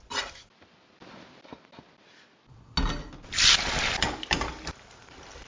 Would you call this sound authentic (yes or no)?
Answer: yes